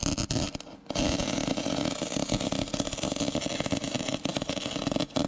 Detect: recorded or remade recorded